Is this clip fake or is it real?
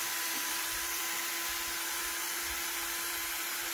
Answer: fake